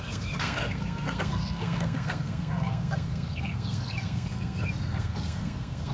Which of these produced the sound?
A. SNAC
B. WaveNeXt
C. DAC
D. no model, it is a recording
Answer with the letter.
A